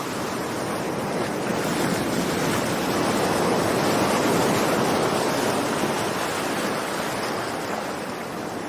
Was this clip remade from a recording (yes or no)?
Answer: no